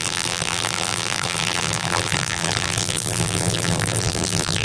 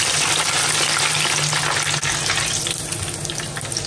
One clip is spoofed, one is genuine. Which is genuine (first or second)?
second